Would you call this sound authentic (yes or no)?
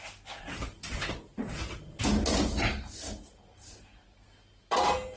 yes